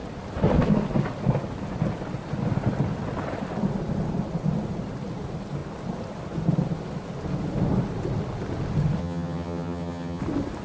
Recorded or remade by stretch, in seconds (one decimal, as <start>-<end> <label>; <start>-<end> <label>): 0.0-9.0 recorded; 9.0-10.2 remade; 10.2-10.6 recorded